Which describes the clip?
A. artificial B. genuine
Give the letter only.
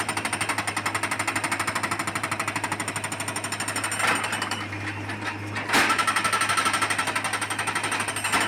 B